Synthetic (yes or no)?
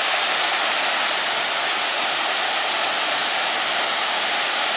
no